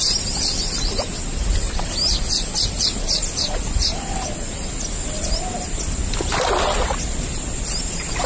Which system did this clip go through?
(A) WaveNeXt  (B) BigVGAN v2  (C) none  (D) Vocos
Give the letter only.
C